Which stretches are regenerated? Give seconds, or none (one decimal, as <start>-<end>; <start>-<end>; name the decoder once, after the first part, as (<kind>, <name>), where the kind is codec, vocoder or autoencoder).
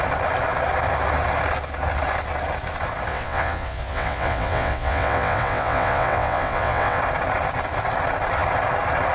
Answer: 3.1-7.0 (vocoder, WaveNeXt)